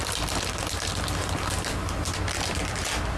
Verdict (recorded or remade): recorded